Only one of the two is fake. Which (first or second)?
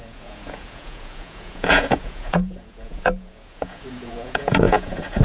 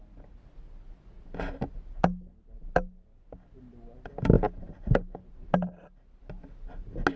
first